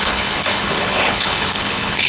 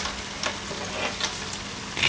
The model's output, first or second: first